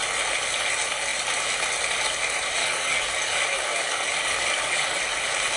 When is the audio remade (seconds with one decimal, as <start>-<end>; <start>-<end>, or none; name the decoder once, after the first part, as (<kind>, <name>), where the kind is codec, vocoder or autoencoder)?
2.6-5.0 (codec, DAC)